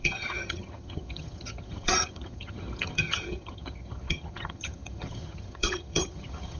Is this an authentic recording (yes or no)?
no